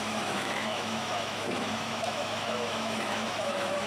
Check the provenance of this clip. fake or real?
fake